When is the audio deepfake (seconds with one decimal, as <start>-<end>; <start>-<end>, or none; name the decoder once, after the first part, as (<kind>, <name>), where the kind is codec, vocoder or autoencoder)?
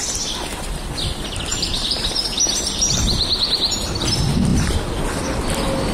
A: 1.5-3.9 (vocoder, BigVGAN v2)